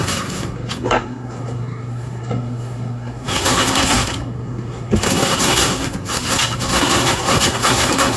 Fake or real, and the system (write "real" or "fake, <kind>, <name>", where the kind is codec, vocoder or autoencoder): fake, codec, SNAC